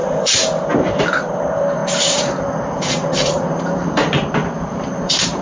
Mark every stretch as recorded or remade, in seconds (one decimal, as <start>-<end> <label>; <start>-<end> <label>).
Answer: 0.0-4.2 remade; 4.2-4.7 recorded; 4.7-5.4 remade

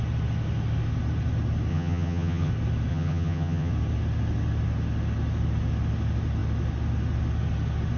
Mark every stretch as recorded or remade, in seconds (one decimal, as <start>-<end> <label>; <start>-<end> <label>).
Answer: 0.0-1.7 recorded; 1.7-2.5 remade; 2.5-2.9 recorded; 2.9-3.7 remade; 3.7-8.0 recorded

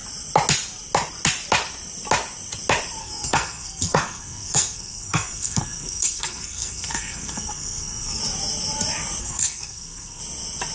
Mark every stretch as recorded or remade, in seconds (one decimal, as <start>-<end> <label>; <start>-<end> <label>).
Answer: 0.0-3.0 recorded; 3.0-8.2 remade; 8.2-9.2 recorded; 9.2-10.2 remade; 10.2-10.7 recorded

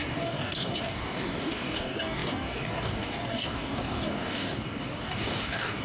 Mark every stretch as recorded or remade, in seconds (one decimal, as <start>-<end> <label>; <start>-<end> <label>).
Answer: 0.0-5.8 remade

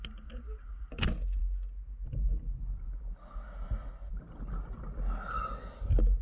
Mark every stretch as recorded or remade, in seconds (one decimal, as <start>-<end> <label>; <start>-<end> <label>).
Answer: 0.0-6.2 recorded

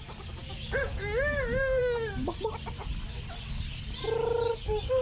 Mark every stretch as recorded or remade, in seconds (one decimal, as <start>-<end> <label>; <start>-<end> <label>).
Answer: 0.0-2.2 remade; 2.2-4.4 recorded; 4.4-5.0 remade

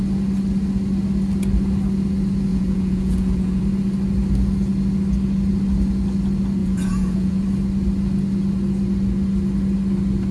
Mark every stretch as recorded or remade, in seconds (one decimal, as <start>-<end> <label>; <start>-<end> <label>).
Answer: 0.0-2.5 recorded; 2.5-3.6 remade; 3.6-6.6 recorded; 6.6-7.4 remade; 7.4-10.3 recorded

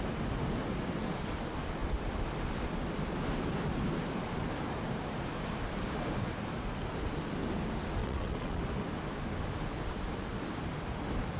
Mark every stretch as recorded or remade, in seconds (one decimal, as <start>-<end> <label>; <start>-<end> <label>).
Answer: 0.0-8.0 recorded; 8.0-8.6 remade; 8.6-11.4 recorded